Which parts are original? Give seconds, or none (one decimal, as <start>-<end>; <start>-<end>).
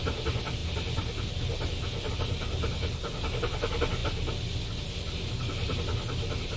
0.0-6.6